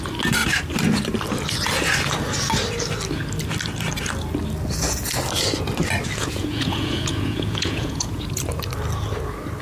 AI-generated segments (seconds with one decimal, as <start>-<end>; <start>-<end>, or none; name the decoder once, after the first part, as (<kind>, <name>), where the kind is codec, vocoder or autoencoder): 6.2-8.4 (vocoder, Vocos)